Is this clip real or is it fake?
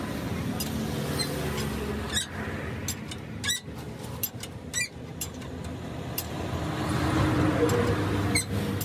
real